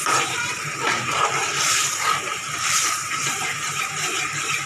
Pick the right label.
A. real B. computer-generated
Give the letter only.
B